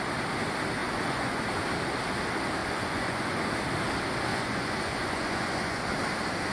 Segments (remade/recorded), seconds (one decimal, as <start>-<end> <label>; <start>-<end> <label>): 0.0-0.8 recorded; 0.8-1.4 remade; 1.4-2.6 recorded; 2.6-3.5 remade; 3.5-4.3 recorded; 4.3-5.8 remade; 5.8-6.5 recorded